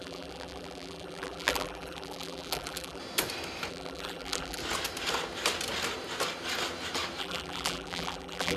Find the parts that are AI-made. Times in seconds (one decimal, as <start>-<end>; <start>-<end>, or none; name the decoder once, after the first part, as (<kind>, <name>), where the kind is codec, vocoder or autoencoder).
0.0-3.0 (vocoder, BigVGAN v2); 3.7-4.6; 7.2-8.6